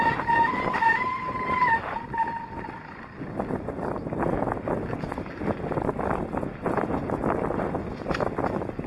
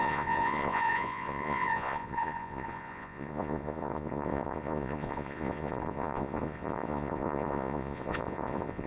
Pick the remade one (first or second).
second